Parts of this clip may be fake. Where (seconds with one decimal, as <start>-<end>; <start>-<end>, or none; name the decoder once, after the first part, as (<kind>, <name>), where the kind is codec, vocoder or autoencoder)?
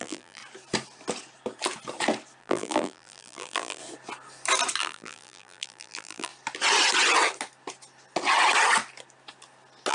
0.0-0.4 (vocoder, BigVGAN v2); 2.4-3.8; 4.8-6.3